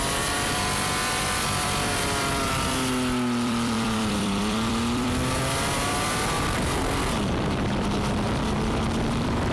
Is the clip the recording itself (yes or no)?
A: no